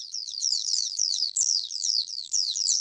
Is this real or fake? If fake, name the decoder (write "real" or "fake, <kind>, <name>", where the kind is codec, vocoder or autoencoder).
fake, vocoder, BigVGAN v2